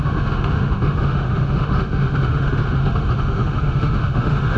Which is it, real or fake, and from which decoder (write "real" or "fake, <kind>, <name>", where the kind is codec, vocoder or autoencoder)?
fake, autoencoder, DAC-VAE